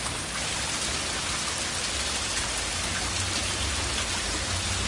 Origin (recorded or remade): recorded